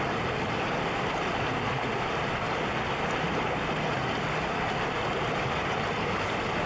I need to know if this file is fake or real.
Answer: real